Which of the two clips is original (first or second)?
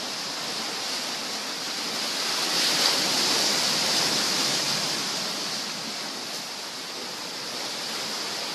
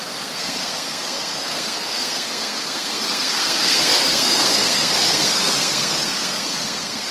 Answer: first